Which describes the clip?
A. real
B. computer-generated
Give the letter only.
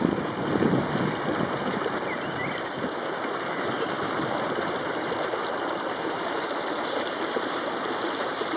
B